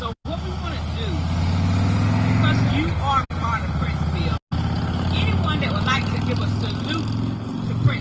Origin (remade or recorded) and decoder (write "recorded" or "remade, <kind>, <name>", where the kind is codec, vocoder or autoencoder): recorded